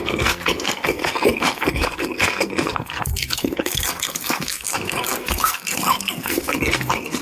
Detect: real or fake fake